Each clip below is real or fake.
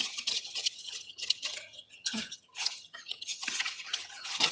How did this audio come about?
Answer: fake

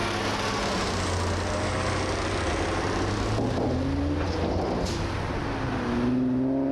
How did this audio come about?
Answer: real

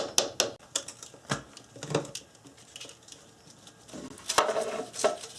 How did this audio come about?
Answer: real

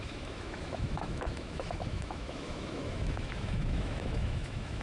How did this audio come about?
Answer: fake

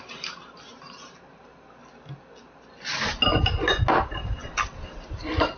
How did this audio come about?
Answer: real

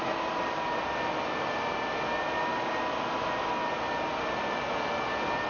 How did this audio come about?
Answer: real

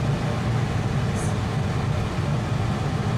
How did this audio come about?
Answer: real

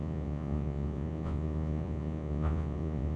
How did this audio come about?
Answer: fake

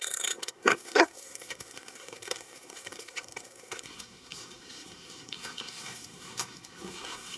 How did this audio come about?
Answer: fake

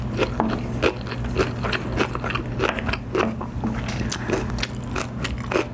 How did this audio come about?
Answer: real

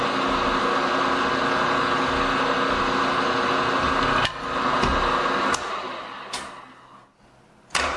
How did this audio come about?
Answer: real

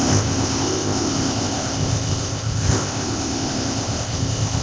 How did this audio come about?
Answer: fake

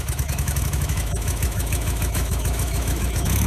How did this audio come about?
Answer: fake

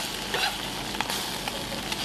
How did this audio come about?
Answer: real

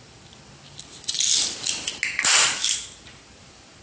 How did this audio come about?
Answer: real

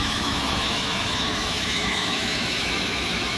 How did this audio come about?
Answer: fake